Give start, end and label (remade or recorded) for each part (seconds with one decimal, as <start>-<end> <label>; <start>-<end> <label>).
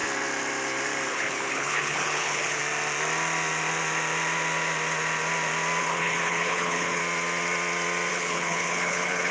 0.0-1.1 recorded; 1.1-2.6 remade; 2.6-5.8 recorded; 5.8-7.0 remade; 7.0-8.1 recorded; 8.1-9.3 remade